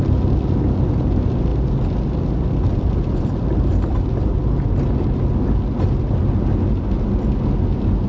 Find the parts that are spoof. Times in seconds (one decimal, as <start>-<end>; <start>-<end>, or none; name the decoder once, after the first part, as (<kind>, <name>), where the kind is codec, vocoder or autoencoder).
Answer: none